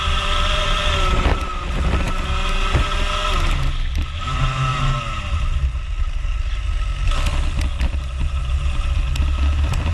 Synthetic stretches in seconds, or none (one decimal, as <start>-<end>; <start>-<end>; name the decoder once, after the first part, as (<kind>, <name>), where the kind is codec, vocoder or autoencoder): 0.0-1.5 (vocoder, BigVGAN v2); 3.9-4.7; 7.7-9.9